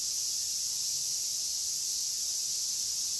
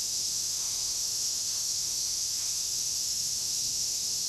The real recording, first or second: first